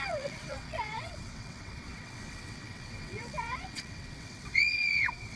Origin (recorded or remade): remade